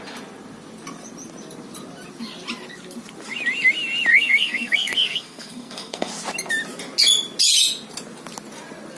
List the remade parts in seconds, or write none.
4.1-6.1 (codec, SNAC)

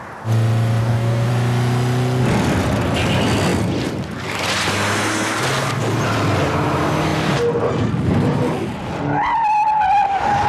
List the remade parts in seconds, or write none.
0.8-1.3 (codec, DAC)

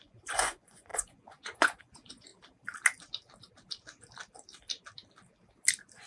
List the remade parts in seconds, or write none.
0.0-2.3 (vocoder, Vocos)

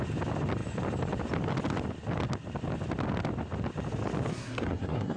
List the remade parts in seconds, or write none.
4.3-5.2 (codec, SNAC)

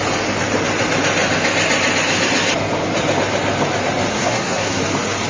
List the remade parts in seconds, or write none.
4.1-4.8 (codec, SNAC)